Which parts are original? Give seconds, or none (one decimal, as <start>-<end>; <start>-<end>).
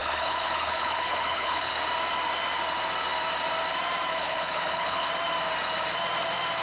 1.7-4.2; 5.1-6.6